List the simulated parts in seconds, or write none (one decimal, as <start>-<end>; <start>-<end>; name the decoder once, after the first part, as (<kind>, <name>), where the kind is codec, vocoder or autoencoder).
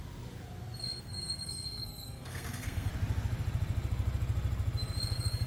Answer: 0.8-2.9 (codec, SNAC); 5.0-5.5